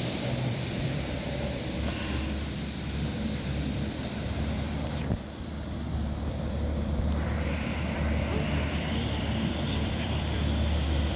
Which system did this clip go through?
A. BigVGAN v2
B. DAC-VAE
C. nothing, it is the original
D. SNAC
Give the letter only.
A